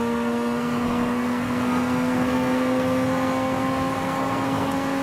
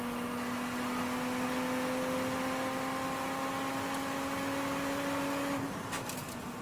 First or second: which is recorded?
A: second